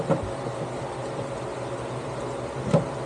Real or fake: real